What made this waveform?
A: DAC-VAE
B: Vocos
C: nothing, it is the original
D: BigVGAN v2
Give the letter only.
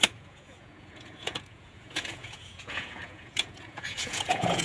B